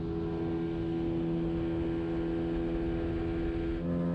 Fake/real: real